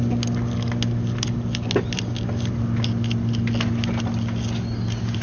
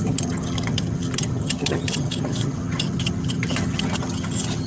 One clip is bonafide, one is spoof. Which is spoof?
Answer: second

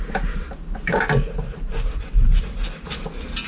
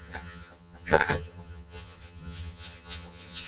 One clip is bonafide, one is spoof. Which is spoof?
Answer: second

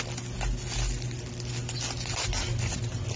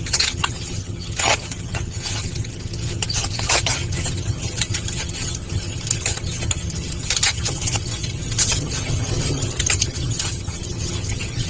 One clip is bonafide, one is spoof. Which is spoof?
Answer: second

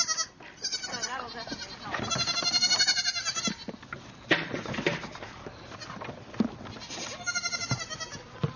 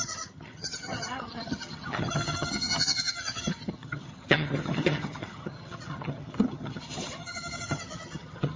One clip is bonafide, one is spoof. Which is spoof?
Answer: second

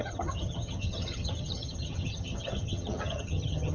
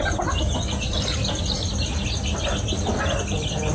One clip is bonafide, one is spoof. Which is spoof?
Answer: first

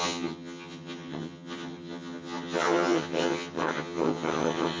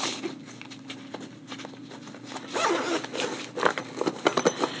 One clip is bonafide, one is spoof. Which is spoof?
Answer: first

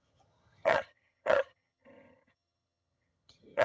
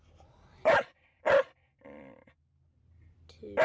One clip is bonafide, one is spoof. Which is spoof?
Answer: first